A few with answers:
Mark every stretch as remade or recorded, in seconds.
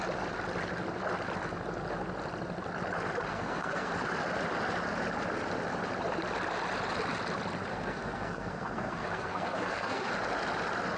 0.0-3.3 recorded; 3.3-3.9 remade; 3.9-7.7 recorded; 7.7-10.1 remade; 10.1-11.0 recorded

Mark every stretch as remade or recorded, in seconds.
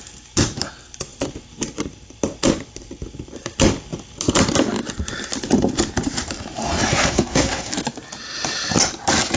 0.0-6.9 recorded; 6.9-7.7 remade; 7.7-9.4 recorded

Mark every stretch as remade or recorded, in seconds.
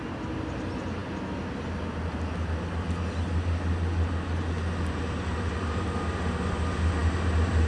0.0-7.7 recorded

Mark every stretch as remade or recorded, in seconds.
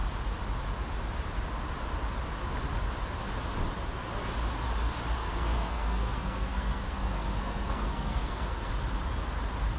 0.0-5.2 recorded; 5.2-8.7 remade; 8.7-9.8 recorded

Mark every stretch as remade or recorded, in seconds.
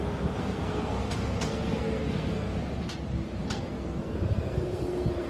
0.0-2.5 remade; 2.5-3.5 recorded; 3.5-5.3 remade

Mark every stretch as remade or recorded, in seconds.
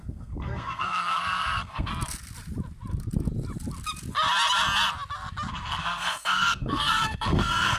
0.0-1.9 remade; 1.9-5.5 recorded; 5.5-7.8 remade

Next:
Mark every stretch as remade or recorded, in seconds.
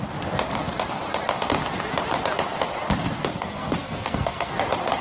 0.0-3.3 recorded; 3.3-4.5 remade; 4.5-5.0 recorded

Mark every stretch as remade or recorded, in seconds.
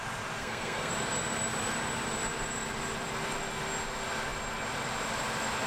0.0-0.4 recorded; 0.4-0.9 remade; 0.9-5.7 recorded